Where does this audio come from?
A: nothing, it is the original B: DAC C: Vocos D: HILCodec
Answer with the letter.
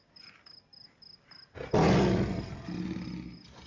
A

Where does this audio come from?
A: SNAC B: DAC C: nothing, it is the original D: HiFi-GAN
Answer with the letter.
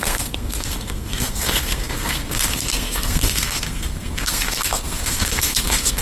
A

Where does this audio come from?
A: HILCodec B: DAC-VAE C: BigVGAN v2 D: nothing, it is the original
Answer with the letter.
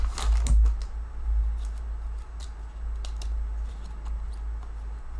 D